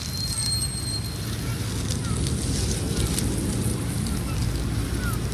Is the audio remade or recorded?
recorded